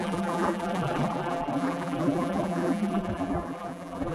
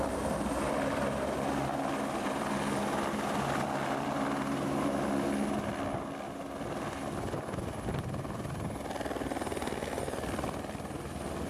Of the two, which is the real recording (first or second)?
second